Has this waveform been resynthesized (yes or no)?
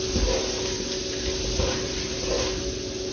no